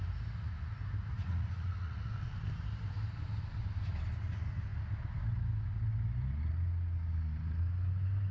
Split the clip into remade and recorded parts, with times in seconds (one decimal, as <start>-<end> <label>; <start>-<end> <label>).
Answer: 0.0-1.1 recorded; 1.1-2.4 remade; 2.4-8.3 recorded